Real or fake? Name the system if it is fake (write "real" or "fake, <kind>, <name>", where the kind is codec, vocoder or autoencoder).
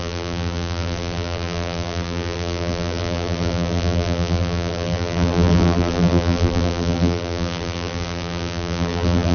fake, vocoder, BigVGAN v2